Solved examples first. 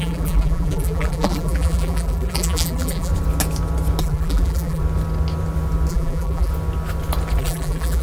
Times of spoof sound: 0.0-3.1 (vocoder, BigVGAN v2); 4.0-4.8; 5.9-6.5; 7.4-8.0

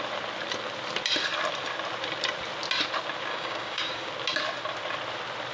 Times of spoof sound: 3.3-4.1 (codec, DAC)